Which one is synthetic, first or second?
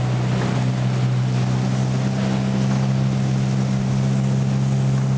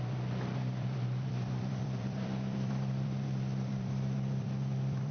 second